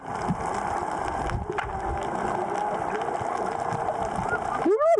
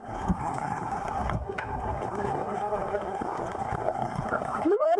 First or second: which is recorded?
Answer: first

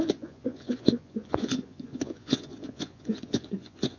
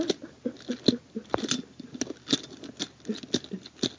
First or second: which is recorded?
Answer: second